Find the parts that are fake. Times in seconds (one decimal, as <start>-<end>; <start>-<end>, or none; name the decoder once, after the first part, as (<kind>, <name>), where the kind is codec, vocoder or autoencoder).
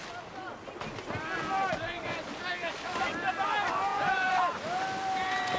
3.9-4.4 (vocoder, Vocos)